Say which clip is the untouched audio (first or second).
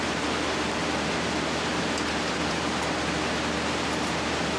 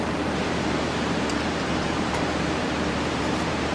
first